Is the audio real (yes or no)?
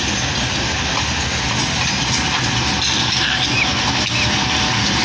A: yes